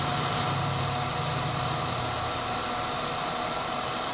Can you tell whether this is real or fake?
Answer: fake